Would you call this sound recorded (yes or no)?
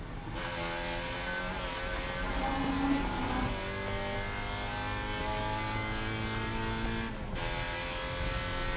yes